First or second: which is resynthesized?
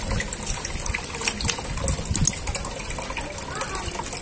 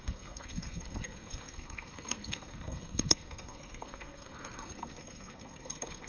second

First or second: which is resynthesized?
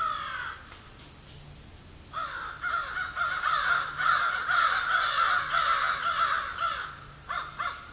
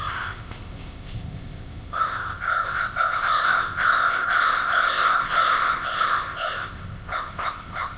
second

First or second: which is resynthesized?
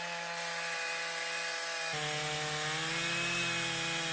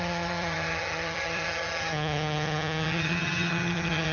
second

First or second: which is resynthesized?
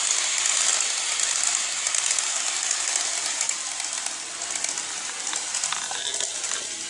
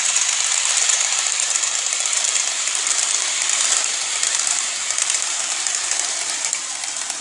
second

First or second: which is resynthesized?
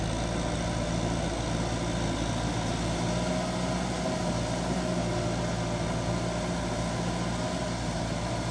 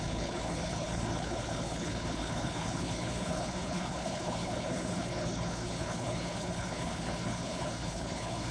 second